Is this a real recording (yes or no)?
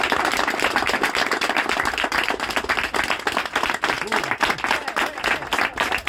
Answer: yes